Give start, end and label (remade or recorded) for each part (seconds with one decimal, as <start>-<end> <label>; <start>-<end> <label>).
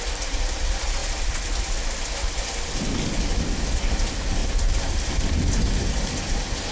0.0-6.7 recorded